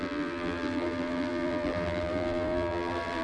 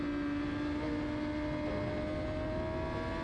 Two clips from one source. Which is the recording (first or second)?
second